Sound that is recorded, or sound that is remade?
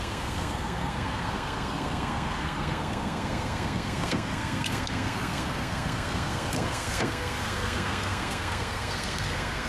remade